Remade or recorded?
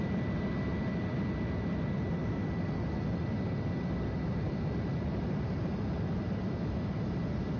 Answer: recorded